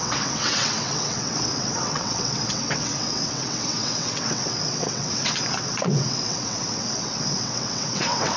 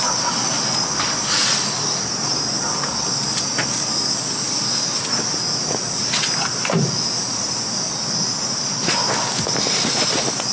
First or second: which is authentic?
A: second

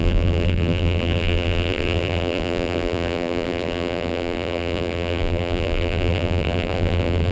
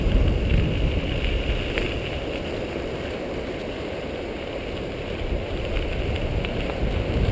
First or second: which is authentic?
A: second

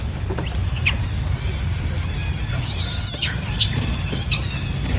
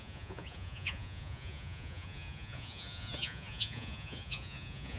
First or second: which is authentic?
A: first